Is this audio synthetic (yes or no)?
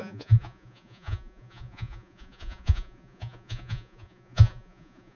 yes